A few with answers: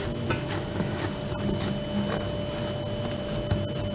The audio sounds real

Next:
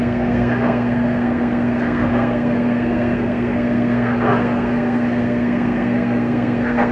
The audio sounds fake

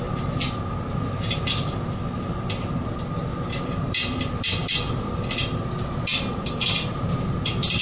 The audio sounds real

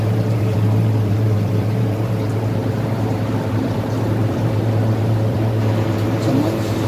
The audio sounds fake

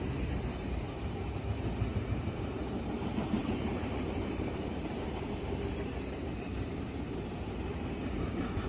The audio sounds fake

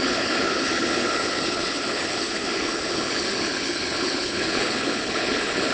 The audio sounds fake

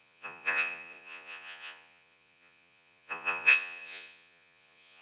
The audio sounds fake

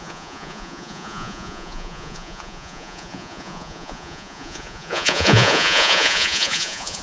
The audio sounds fake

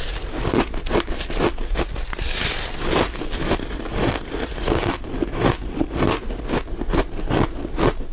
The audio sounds real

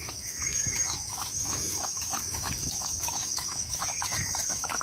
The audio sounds fake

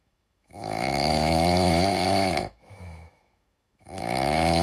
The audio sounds fake